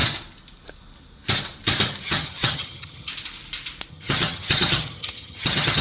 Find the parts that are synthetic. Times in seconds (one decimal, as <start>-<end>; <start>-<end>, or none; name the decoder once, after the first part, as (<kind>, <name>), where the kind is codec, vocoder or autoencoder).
2.0-3.1 (vocoder, HiFi-GAN); 3.9-5.8